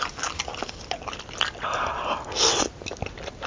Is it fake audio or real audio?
real